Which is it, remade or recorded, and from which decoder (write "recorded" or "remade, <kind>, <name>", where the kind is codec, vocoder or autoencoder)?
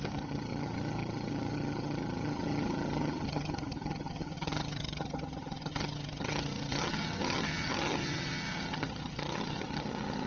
remade, vocoder, HiFi-GAN